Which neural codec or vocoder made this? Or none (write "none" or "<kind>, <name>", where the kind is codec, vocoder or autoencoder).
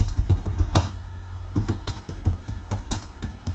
codec, SNAC